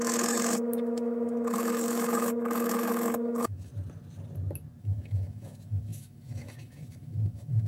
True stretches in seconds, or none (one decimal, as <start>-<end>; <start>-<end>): 3.7-4.8